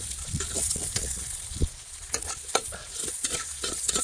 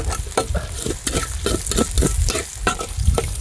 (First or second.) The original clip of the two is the second